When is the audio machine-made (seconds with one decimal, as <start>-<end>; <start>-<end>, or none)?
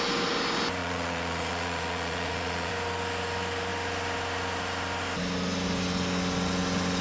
0.8-2.7